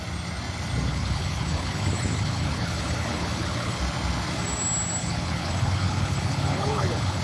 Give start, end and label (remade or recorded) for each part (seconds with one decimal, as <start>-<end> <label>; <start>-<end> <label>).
0.0-0.9 recorded; 0.9-3.8 remade; 3.8-5.0 recorded; 5.0-7.2 remade